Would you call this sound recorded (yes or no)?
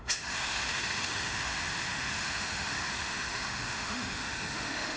no